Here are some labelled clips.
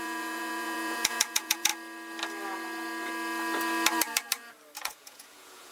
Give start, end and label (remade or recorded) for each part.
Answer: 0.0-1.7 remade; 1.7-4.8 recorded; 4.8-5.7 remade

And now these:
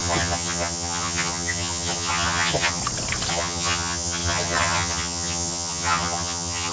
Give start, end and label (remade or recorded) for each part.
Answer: 0.0-2.8 remade; 2.8-3.3 recorded; 3.3-6.7 remade

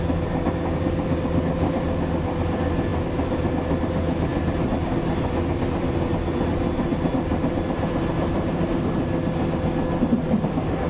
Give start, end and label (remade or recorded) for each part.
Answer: 0.0-10.9 recorded

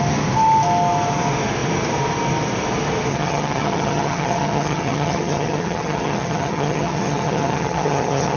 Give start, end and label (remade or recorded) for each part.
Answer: 0.0-3.1 recorded; 3.1-8.4 remade

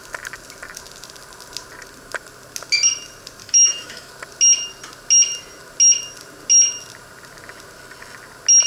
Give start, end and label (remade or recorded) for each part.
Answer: 0.0-3.4 recorded; 3.4-4.1 remade; 4.1-8.7 recorded

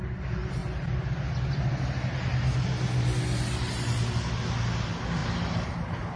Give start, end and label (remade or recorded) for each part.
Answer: 0.0-6.2 recorded

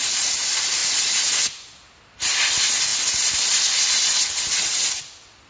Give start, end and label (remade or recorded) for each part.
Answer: 0.0-5.5 recorded